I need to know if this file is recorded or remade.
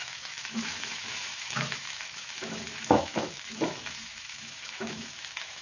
remade